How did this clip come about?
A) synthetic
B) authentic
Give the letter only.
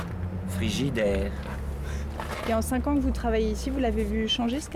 B